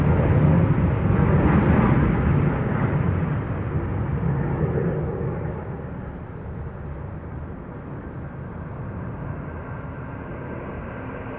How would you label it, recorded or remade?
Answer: recorded